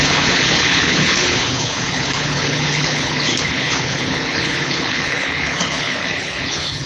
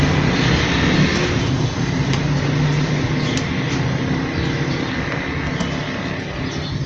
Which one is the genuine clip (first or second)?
second